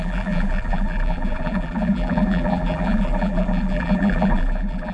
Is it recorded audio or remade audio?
remade